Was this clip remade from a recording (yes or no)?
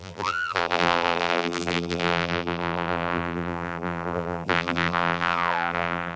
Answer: yes